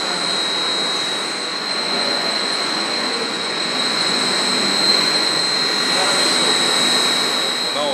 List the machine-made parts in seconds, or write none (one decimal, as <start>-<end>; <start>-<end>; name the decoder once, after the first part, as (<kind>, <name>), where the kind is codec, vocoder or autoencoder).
1.5-4.2 (vocoder, Vocos); 4.9-5.4